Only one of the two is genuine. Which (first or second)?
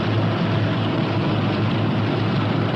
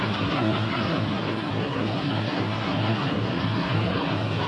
first